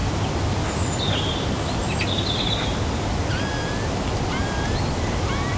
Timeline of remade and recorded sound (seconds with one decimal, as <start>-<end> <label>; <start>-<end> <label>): 0.0-5.6 recorded